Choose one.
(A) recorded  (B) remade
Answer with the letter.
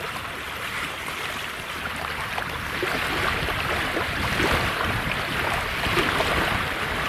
A